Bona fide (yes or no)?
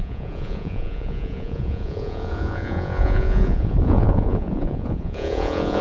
no